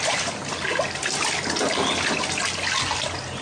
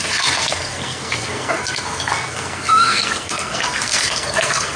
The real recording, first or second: first